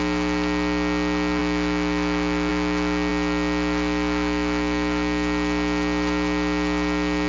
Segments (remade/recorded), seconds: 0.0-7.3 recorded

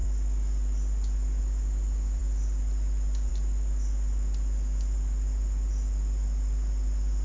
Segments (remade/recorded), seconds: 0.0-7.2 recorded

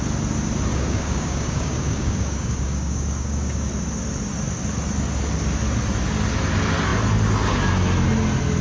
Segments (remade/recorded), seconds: 0.0-0.7 recorded; 0.7-3.7 remade; 3.7-8.6 recorded

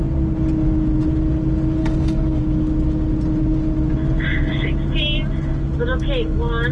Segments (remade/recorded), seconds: 0.0-1.8 recorded; 1.8-2.4 remade; 2.4-6.7 recorded

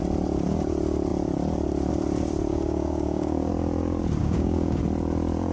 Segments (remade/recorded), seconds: 0.0-2.5 recorded; 2.5-3.5 remade; 3.5-4.2 recorded; 4.2-4.8 remade; 4.8-5.5 recorded